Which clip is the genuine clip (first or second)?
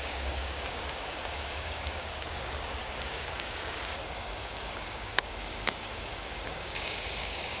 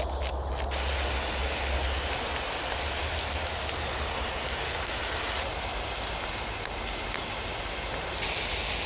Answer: second